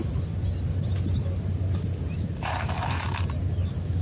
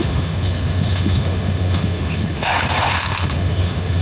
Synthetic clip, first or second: second